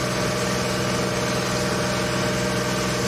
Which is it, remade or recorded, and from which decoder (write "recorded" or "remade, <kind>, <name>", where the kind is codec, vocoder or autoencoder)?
recorded